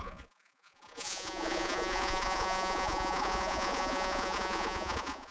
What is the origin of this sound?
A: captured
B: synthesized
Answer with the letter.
B